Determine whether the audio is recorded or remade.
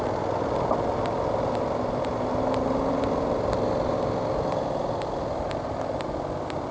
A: recorded